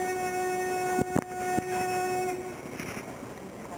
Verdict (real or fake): real